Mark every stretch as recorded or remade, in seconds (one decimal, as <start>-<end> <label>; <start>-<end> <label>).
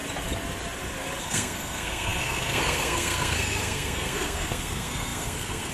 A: 0.0-1.2 recorded; 1.2-5.7 remade